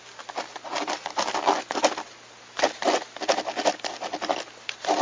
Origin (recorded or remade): recorded